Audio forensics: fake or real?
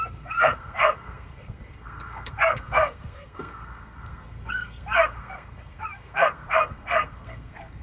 fake